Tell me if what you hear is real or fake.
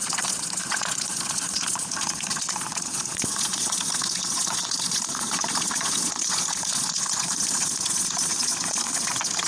fake